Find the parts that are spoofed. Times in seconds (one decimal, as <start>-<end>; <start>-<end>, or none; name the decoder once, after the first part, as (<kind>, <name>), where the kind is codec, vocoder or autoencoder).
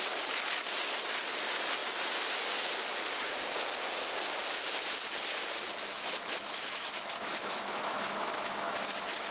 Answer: 5.9-9.3 (autoencoder, DAC-VAE)